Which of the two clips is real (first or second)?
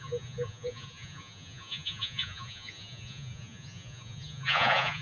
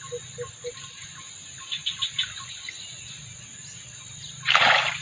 second